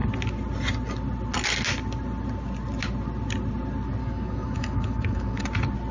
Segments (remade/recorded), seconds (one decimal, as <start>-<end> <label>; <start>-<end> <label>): 0.0-4.0 recorded; 4.0-5.4 remade; 5.4-5.9 recorded